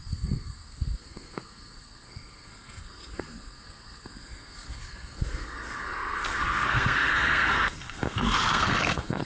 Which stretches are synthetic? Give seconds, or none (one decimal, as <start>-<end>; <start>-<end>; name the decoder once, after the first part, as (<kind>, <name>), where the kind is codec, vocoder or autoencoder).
0.0-9.2 (codec, SNAC)